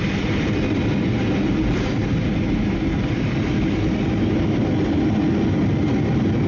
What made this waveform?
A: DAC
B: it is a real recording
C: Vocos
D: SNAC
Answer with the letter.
B